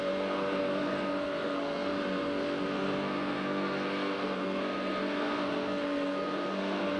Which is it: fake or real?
fake